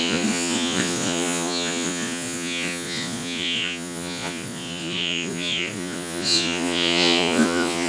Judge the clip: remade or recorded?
remade